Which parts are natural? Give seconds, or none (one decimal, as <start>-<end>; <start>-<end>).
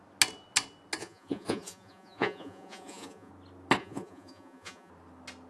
0.0-1.0; 3.3-3.8; 4.9-5.5